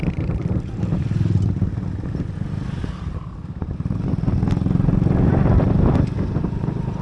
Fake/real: real